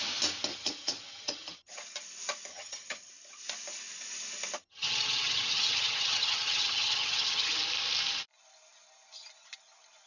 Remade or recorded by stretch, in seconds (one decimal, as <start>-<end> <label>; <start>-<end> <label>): 0.0-0.5 recorded; 0.5-1.7 remade; 1.7-2.5 recorded; 2.5-3.1 remade; 3.1-4.6 recorded; 4.6-7.6 remade; 7.6-10.1 recorded